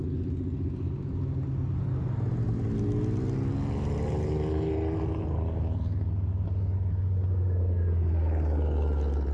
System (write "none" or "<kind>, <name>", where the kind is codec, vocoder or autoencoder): none